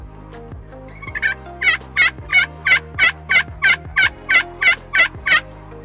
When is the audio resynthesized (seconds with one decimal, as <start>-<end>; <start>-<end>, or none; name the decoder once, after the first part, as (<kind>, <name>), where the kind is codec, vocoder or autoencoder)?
none